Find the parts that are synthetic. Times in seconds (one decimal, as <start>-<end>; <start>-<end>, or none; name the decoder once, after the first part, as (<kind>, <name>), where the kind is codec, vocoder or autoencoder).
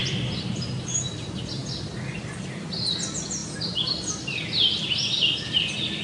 0.0-1.0 (vocoder, BigVGAN v2)